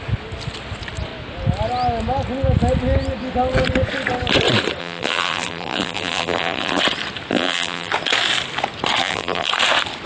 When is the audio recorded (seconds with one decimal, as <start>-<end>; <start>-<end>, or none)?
0.0-4.8; 6.8-7.3; 7.9-9.0; 9.5-10.1